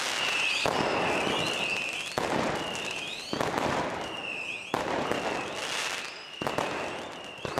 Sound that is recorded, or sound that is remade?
recorded